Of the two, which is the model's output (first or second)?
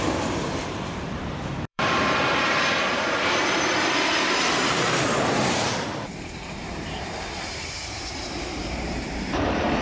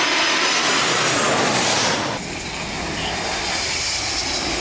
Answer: first